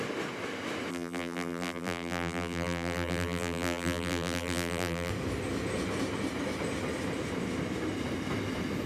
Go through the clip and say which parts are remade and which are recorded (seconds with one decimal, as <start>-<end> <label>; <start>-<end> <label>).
0.0-0.9 recorded; 0.9-5.1 remade; 5.1-8.9 recorded